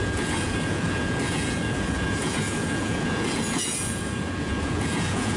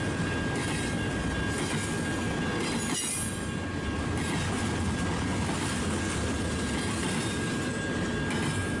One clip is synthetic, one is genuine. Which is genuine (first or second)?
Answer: second